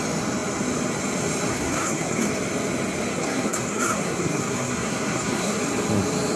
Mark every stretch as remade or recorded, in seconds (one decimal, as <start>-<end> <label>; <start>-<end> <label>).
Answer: 0.0-1.5 recorded; 1.5-2.3 remade; 2.3-3.1 recorded; 3.1-5.6 remade; 5.6-6.4 recorded